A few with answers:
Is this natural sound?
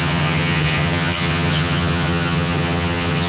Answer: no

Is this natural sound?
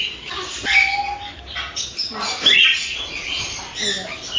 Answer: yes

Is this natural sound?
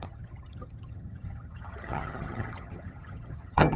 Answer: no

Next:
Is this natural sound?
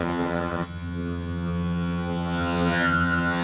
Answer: no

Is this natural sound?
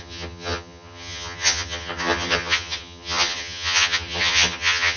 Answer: no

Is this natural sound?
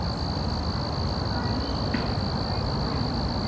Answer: yes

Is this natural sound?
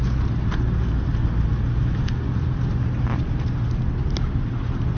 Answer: yes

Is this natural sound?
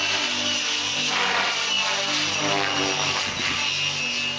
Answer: yes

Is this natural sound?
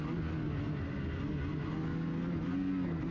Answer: yes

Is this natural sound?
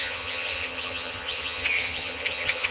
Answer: no